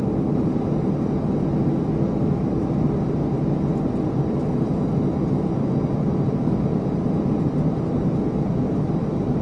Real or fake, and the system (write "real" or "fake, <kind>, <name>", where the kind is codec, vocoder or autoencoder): real